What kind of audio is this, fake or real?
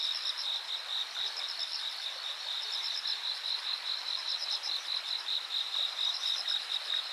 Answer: fake